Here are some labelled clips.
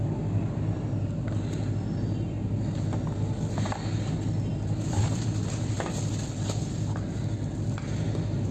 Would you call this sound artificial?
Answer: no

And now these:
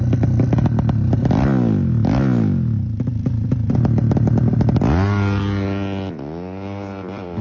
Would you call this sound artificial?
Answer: no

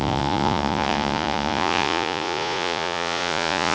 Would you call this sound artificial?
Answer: yes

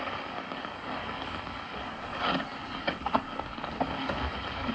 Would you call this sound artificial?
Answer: yes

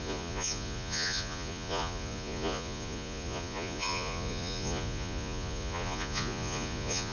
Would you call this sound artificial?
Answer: yes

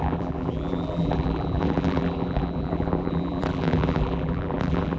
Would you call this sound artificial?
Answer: yes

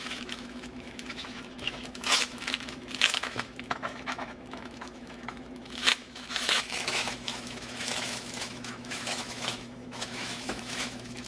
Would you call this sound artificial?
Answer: yes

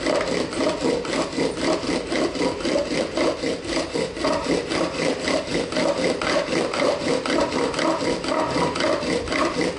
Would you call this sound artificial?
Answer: no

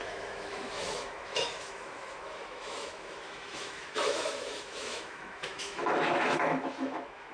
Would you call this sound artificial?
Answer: yes